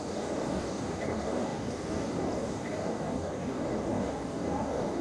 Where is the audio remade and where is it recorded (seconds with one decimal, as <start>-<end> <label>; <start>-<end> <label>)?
0.0-5.0 remade